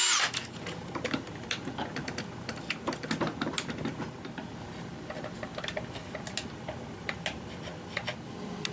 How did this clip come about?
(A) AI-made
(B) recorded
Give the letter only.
B